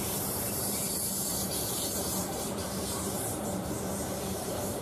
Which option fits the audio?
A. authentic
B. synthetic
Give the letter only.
B